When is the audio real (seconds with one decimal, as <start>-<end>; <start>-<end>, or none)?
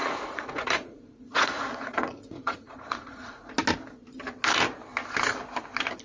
3.5-6.0